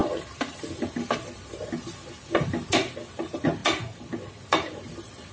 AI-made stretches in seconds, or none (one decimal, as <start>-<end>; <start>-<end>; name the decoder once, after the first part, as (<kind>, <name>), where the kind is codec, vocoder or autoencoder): none